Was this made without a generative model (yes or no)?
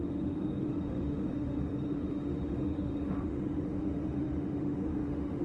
no